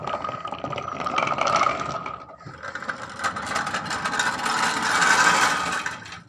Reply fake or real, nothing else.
real